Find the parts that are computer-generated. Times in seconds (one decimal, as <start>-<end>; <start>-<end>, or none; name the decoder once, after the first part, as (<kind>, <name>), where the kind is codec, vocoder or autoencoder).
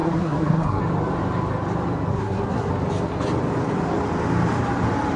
0.0-0.8 (codec, SNAC); 2.1-2.7